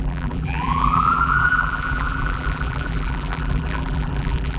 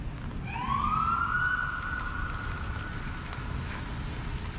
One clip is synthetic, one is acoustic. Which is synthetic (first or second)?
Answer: first